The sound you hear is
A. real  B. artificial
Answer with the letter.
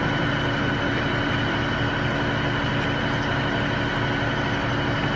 A